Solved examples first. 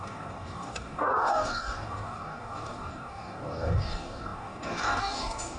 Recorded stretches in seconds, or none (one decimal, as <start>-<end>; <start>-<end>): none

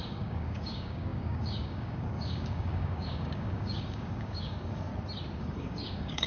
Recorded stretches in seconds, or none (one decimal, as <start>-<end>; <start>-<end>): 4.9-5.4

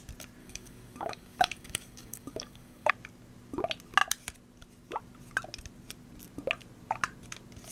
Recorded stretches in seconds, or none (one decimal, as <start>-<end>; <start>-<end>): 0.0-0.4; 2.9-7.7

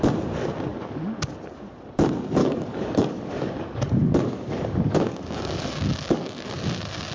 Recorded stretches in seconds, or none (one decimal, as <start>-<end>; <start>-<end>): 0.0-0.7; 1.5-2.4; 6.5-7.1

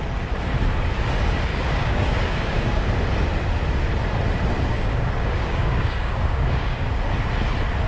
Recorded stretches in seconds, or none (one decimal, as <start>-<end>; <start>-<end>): 0.0-1.5; 2.9-4.7; 6.9-7.9

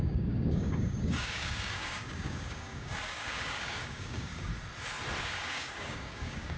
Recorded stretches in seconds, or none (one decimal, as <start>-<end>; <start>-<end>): 4.5-5.2

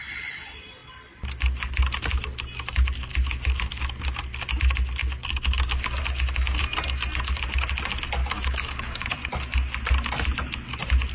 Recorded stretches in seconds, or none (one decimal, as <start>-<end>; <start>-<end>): 0.0-8.2; 9.1-11.1

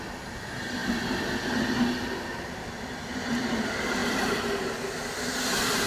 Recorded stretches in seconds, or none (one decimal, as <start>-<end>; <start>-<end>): 0.0-5.9